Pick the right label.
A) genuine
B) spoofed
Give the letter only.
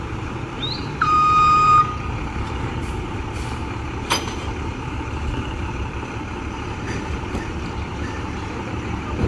B